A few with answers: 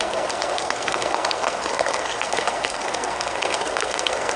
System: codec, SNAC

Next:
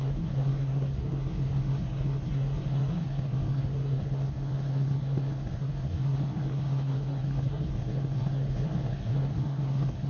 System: codec, SNAC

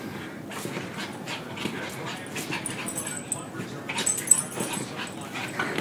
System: none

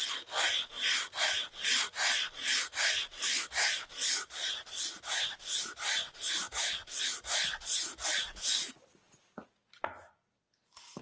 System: none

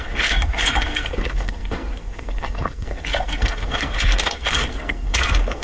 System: codec, SNAC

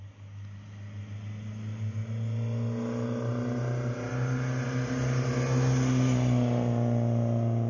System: none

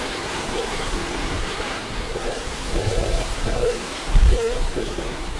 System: codec, SNAC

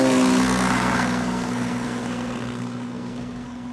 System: codec, SNAC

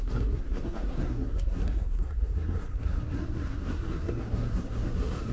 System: codec, SNAC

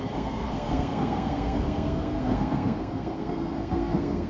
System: codec, SNAC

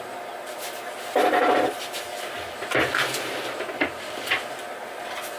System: none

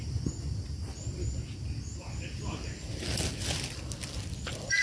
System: none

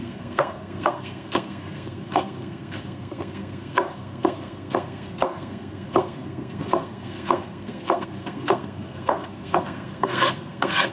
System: codec, SNAC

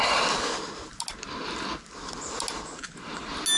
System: none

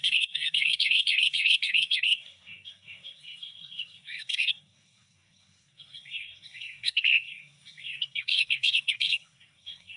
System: codec, SNAC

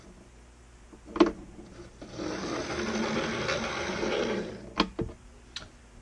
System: none